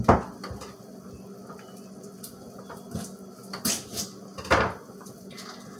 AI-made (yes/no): no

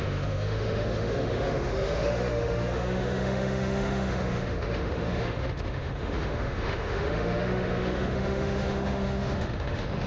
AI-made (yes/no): yes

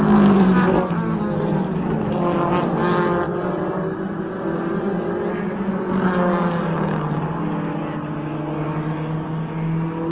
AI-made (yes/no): no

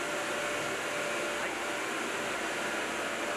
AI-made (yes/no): no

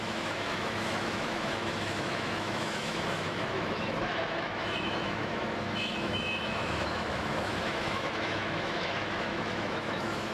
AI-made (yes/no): yes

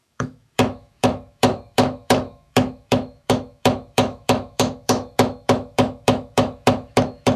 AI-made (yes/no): yes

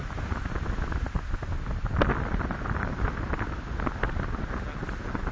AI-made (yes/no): no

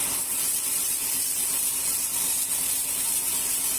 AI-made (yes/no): no